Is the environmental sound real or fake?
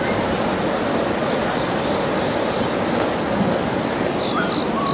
real